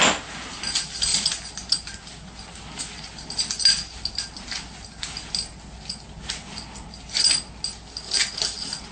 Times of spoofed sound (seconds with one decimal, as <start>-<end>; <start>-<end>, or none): none